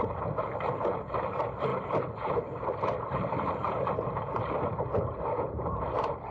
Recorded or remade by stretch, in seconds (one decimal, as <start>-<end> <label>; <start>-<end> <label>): 0.0-6.3 remade

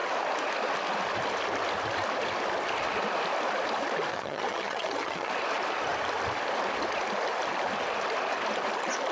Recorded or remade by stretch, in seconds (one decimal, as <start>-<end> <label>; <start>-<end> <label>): 0.0-4.1 recorded; 4.1-5.3 remade; 5.3-9.1 recorded

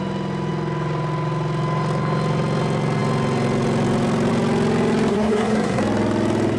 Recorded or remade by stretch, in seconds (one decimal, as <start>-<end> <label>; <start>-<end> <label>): 0.0-5.1 recorded; 5.1-5.8 remade; 5.8-6.6 recorded

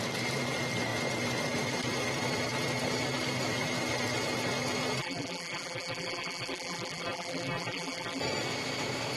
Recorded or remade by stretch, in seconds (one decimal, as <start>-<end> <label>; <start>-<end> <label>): 0.0-5.0 recorded; 5.0-8.2 remade; 8.2-9.2 recorded

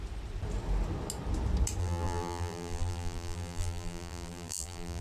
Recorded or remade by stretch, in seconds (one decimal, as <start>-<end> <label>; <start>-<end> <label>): 0.0-1.8 recorded; 1.8-5.0 remade

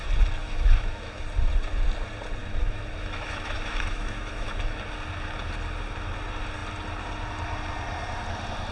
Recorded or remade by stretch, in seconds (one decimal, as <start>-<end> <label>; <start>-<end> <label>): 0.0-0.4 recorded; 0.4-1.2 remade; 1.2-2.4 recorded; 2.4-4.8 remade; 4.8-8.7 recorded

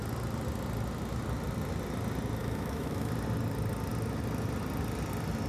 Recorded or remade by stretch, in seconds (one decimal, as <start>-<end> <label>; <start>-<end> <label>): 0.0-2.4 recorded; 2.4-3.1 remade; 3.1-5.5 recorded

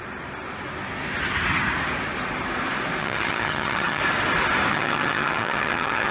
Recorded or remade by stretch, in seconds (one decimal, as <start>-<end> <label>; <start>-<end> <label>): 0.0-3.0 recorded; 3.0-4.0 remade; 4.0-4.7 recorded; 4.7-6.1 remade